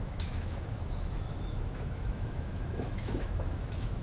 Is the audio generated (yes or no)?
yes